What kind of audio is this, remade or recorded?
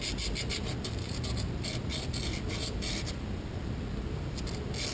recorded